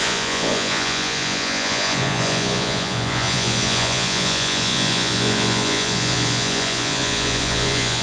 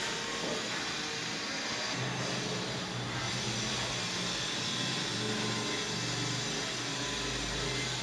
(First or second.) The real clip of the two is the second